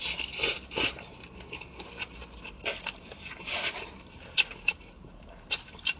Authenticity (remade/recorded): remade